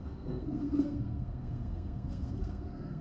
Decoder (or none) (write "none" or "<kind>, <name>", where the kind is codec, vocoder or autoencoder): codec, SNAC